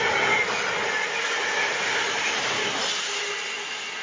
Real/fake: real